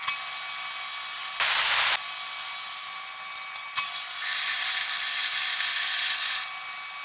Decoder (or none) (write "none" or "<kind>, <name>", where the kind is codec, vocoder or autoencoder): none